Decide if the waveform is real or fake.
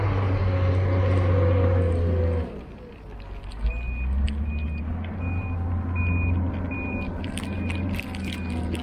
real